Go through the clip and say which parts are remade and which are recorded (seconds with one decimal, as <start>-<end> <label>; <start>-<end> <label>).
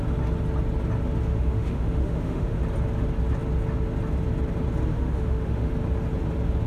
0.0-1.3 recorded; 1.3-2.6 remade; 2.6-4.9 recorded; 4.9-5.7 remade; 5.7-6.7 recorded